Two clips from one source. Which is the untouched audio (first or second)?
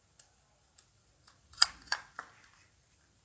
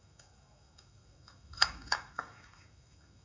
first